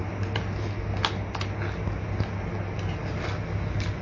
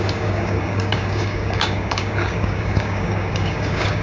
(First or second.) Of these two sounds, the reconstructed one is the second